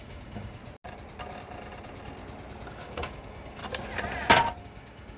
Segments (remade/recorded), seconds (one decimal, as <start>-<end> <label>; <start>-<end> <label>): 0.0-0.6 remade; 0.6-2.7 recorded; 2.7-3.6 remade; 3.6-4.6 recorded; 4.6-5.2 remade